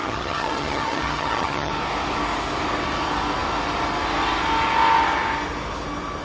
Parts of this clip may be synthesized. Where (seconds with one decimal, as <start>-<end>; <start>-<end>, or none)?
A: 0.0-1.7